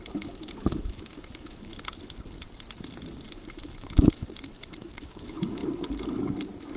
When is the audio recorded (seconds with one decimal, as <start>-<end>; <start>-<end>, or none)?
1.7-3.6; 5.6-6.8